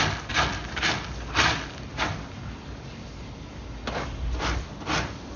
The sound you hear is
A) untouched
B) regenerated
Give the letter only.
A